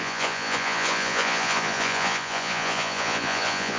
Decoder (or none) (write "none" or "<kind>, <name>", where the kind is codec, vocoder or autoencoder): vocoder, Vocos